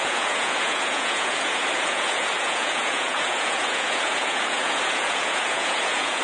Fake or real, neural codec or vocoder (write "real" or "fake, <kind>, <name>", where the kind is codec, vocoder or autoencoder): fake, vocoder, Vocos